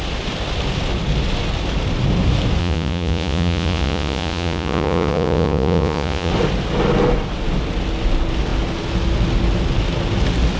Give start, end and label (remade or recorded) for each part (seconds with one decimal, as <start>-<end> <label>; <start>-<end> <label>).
0.0-2.6 recorded; 2.6-6.3 remade; 6.3-10.6 recorded